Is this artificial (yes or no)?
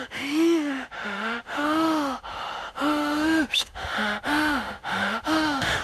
yes